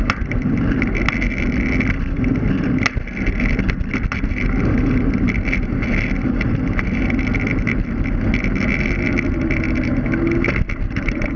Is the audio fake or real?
real